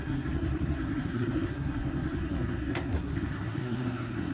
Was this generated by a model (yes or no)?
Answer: yes